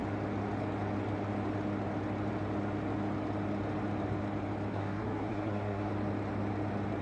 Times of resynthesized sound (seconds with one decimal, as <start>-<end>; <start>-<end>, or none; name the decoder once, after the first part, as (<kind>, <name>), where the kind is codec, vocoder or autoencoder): 4.7-5.9 (codec, SNAC)